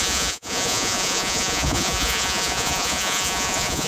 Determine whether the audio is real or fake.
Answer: fake